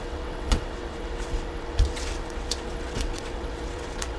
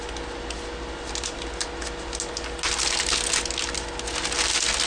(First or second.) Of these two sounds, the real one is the second